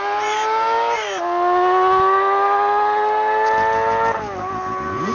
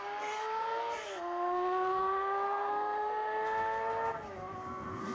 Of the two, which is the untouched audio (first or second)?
first